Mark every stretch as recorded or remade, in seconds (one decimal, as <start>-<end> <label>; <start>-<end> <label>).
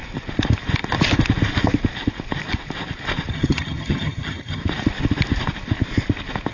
0.0-3.3 recorded; 3.3-4.6 remade; 4.6-6.5 recorded